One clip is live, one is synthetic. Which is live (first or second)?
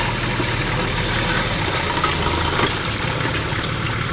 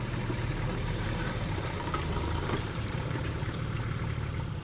first